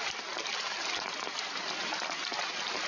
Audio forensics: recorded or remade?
recorded